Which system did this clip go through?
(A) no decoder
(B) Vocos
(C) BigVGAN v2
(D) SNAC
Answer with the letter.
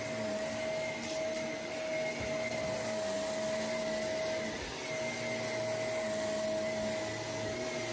A